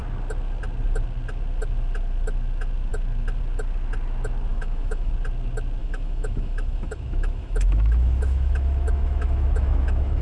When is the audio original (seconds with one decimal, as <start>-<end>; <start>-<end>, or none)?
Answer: 0.0-4.5; 5.1-5.8